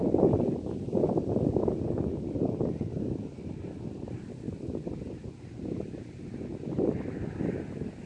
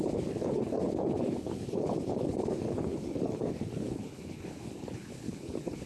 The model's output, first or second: second